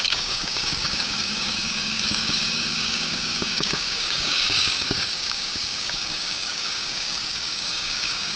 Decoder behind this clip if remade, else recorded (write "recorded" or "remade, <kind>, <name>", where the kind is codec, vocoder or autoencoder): remade, codec, DAC